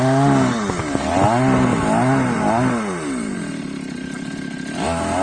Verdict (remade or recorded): recorded